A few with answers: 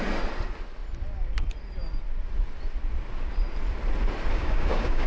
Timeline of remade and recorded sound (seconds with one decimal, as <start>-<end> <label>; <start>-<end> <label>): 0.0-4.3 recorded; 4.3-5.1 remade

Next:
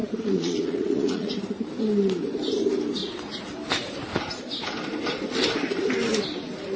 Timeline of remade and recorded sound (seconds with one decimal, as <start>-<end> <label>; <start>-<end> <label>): 0.0-1.3 remade; 1.3-6.8 recorded

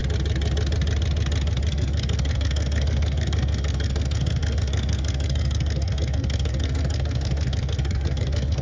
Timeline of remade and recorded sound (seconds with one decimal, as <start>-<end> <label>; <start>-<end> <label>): 0.0-1.7 recorded; 1.7-8.6 remade

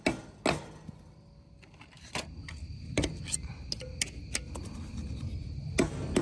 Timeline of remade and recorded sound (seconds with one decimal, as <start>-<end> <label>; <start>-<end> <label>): 0.0-6.2 recorded